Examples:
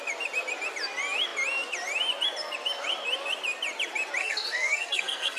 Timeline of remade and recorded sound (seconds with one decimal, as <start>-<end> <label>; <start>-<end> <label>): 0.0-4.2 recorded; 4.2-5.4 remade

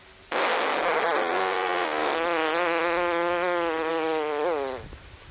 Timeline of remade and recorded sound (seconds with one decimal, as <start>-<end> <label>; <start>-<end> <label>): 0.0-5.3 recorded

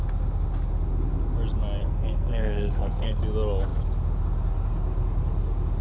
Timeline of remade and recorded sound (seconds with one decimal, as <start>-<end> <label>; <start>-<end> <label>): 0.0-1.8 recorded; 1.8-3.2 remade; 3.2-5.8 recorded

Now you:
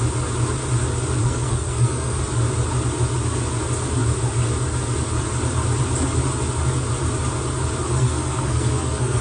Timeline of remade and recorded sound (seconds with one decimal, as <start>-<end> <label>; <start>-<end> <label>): 0.0-1.2 recorded; 1.2-2.2 remade; 2.2-7.9 recorded; 7.9-9.2 remade

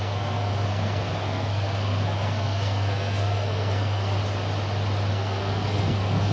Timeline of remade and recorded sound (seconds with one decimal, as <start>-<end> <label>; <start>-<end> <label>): 0.0-4.2 remade; 4.2-5.1 recorded; 5.1-6.3 remade

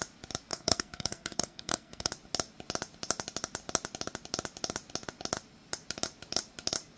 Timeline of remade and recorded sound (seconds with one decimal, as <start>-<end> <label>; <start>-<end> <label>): 0.0-0.5 recorded; 0.5-2.1 remade; 2.1-7.0 recorded